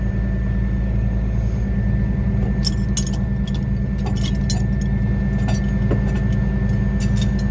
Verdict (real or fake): real